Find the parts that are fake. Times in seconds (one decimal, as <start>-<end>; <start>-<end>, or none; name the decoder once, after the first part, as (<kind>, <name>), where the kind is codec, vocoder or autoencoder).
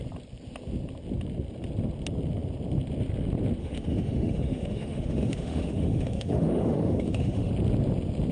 3.6-7.5 (autoencoder, DAC-VAE)